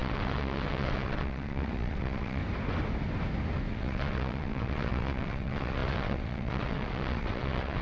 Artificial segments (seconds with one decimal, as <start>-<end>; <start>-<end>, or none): 0.0-2.4; 3.7-7.8